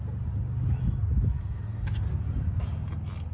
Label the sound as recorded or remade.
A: recorded